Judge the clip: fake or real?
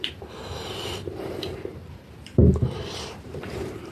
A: fake